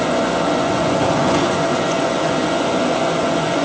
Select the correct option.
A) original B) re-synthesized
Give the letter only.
B